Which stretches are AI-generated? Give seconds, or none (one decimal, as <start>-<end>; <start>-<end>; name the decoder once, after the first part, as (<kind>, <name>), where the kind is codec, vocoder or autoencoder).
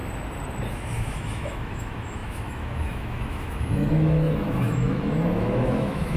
0.7-6.2 (autoencoder, DAC-VAE)